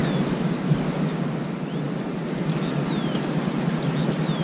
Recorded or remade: recorded